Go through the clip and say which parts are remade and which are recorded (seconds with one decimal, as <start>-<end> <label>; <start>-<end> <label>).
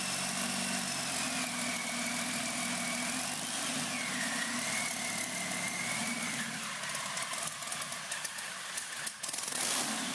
0.0-6.0 recorded; 6.0-6.7 remade; 6.7-10.1 recorded